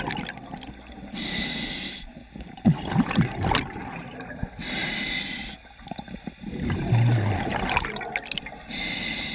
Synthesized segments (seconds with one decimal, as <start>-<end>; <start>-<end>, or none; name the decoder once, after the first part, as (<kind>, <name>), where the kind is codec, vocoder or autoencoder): none

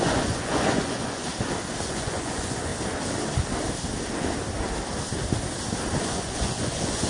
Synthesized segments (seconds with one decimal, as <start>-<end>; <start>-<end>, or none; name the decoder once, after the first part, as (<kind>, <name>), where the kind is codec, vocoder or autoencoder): 0.0-1.3 (vocoder, Vocos); 1.9-2.7; 6.0-7.1

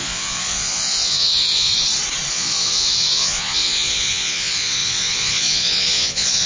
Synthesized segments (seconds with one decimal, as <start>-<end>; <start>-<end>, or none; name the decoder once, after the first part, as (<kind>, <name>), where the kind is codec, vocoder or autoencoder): 0.0-1.7 (vocoder, Vocos); 2.3-6.5

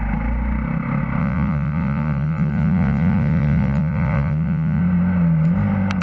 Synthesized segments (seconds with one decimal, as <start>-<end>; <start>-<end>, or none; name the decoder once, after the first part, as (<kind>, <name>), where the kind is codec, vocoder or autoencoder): 1.2-4.8 (vocoder, Vocos)

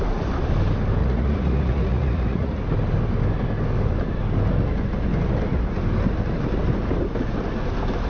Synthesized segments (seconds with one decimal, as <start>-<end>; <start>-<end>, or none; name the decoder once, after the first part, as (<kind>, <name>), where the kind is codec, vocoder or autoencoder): 1.0-2.6 (vocoder, Vocos)

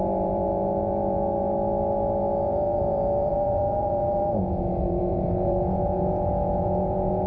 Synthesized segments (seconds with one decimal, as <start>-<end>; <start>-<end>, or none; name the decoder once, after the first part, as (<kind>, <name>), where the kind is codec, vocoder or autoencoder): 0.0-7.3 (vocoder, Vocos)

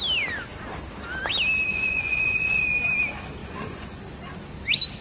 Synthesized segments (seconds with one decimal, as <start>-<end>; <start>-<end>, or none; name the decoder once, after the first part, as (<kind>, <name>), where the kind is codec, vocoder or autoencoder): 1.7-2.6 (vocoder, Vocos); 3.4-4.0